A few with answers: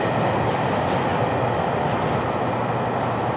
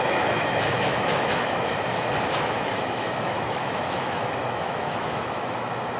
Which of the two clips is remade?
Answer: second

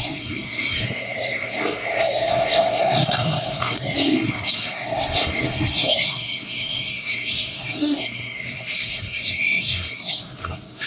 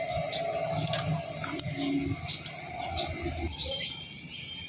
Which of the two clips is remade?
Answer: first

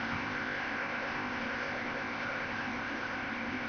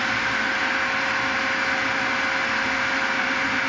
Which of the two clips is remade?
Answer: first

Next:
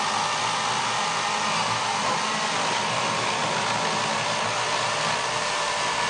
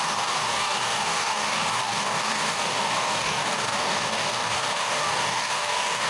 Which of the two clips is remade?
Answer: second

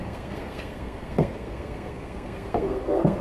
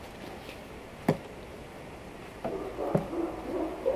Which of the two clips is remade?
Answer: first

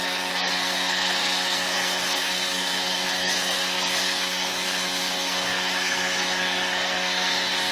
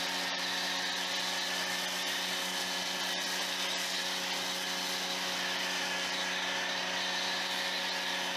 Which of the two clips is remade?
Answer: first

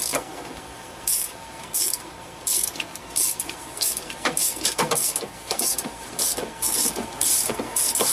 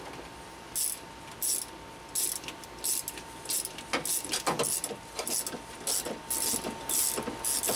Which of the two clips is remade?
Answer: first